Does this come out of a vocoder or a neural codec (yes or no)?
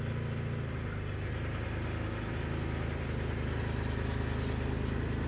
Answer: no